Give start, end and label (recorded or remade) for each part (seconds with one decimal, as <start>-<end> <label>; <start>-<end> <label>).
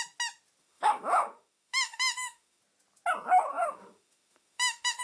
0.0-0.6 recorded; 0.6-2.6 remade; 2.6-3.5 recorded; 3.5-5.0 remade